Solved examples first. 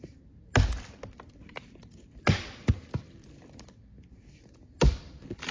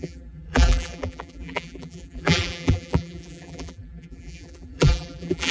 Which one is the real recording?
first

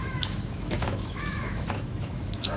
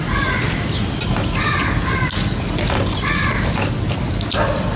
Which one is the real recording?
second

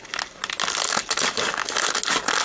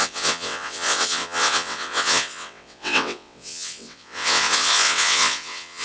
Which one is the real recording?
first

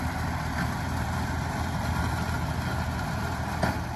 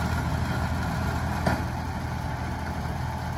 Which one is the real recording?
second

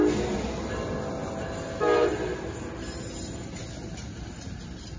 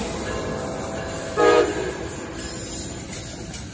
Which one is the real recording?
first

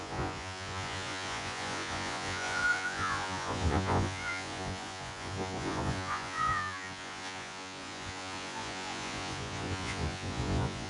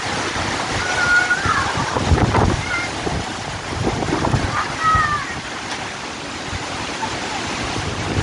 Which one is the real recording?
second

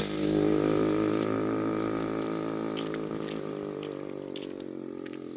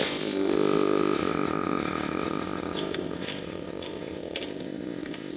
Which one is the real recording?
first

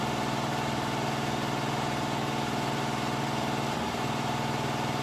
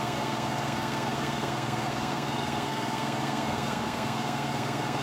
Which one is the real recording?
first